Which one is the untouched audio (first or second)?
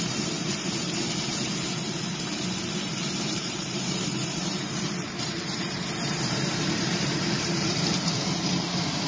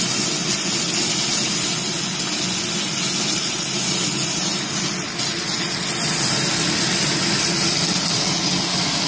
second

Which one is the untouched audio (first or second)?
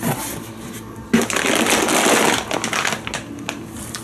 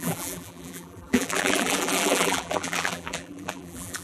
first